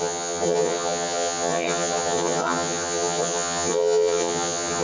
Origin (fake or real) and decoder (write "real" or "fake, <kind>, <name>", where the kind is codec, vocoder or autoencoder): fake, vocoder, HiFi-GAN